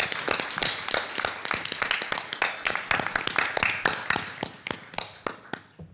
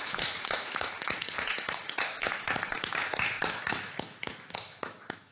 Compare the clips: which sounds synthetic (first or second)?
second